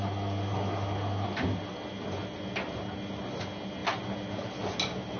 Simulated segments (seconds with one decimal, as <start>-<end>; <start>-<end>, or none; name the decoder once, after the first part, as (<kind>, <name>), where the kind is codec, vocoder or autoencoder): none

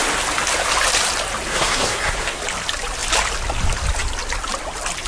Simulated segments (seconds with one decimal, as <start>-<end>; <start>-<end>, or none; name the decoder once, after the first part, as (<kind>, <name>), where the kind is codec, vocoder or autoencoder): 1.5-2.4 (codec, SNAC)

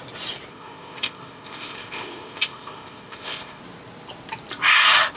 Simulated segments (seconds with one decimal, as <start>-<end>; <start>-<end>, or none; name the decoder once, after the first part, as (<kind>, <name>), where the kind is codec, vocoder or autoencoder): 0.5-3.6 (codec, ZipCodec)

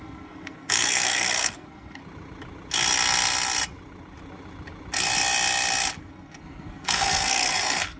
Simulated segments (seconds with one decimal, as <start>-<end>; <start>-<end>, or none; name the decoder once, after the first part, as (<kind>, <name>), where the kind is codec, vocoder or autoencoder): 0.0-2.0 (codec, SNAC); 6.0-8.0

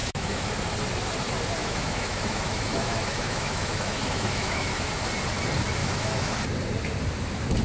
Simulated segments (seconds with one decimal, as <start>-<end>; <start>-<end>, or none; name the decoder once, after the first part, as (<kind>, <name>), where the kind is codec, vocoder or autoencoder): 0.0-0.5 (autoencoder, DAC-VAE); 1.6-4.9; 5.8-6.3

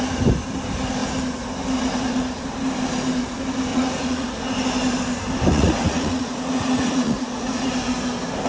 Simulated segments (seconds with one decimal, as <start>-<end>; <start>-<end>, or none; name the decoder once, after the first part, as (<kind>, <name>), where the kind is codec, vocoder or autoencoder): 3.7-4.4 (vocoder, Vocos); 5.5-7.7

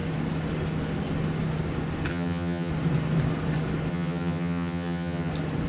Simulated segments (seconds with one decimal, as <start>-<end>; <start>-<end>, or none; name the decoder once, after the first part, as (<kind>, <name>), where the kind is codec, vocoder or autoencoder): 2.1-2.7 (vocoder, HiFi-GAN); 3.9-5.3